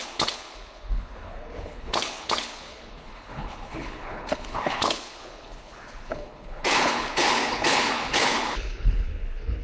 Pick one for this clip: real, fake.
fake